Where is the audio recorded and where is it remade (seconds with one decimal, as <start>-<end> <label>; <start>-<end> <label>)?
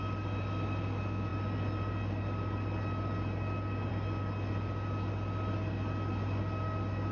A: 0.0-7.1 recorded